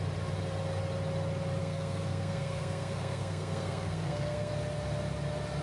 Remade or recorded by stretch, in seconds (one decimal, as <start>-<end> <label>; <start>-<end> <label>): 0.0-1.6 recorded; 1.6-4.5 remade; 4.5-5.6 recorded